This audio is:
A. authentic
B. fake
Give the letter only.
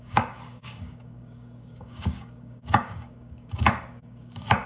B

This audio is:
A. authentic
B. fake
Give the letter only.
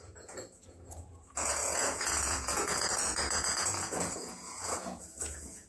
B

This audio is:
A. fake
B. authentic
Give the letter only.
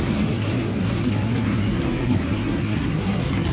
A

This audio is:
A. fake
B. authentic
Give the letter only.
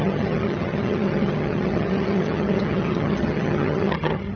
A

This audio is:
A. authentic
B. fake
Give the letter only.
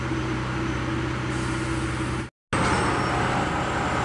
A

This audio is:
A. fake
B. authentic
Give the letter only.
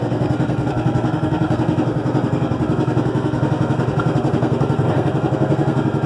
A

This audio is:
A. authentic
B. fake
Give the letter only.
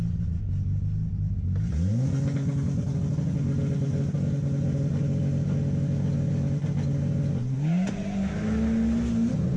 A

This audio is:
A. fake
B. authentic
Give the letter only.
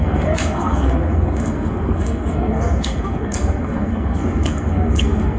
A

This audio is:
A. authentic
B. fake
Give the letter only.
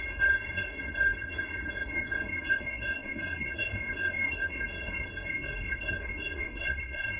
B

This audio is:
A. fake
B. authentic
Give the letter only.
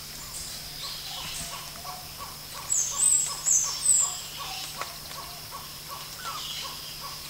B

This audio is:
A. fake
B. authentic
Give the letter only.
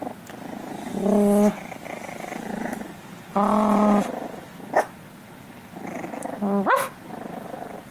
B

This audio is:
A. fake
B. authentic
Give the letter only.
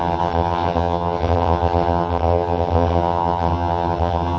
A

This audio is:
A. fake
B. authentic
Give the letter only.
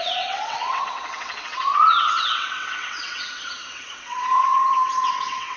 A